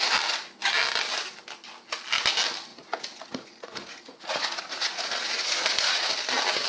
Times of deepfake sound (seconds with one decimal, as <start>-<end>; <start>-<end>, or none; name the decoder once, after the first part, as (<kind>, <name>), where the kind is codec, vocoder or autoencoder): 2.7-6.1 (vocoder, Vocos)